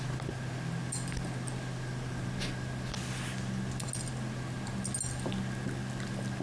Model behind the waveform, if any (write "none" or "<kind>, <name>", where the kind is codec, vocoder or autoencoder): none